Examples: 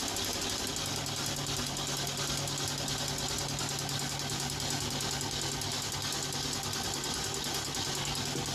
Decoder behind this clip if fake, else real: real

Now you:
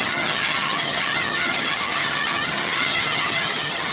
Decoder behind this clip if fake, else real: fake, vocoder, HiFi-GAN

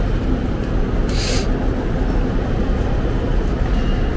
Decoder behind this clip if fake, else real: real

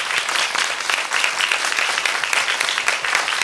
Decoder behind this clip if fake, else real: real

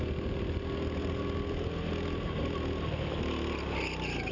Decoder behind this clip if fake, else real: real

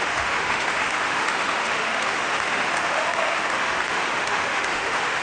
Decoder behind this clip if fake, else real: fake, autoencoder, DAC-VAE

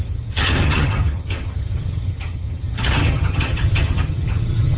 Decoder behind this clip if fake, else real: fake, vocoder, HiFi-GAN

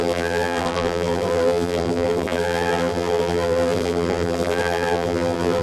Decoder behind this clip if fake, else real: fake, vocoder, BigVGAN v2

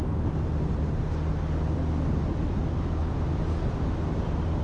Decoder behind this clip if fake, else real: real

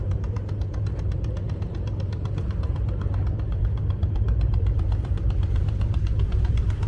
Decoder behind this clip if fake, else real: fake, vocoder, BigVGAN v2